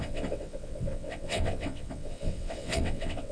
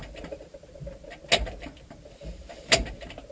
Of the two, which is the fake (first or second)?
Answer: first